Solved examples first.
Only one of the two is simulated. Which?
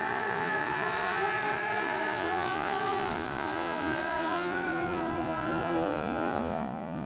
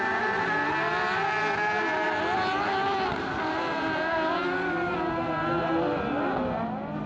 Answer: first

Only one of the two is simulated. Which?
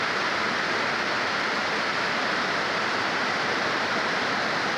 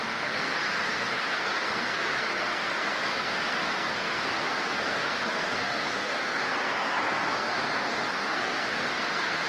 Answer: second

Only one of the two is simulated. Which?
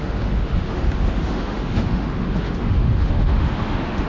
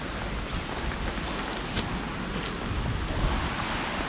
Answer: first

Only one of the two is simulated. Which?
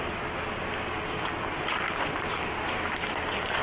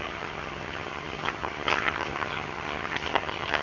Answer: second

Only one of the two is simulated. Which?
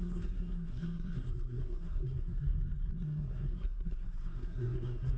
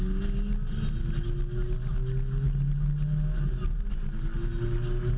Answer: first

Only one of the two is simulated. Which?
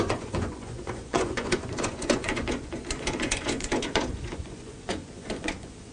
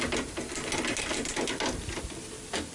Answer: first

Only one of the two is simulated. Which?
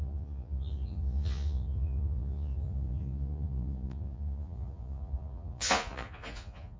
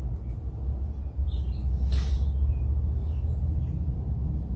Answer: first